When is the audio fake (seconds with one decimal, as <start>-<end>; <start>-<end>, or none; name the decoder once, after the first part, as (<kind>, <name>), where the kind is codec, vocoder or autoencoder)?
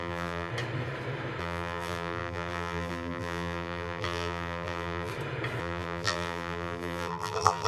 0.0-0.5 (vocoder, BigVGAN v2); 1.4-5.1; 5.6-7.7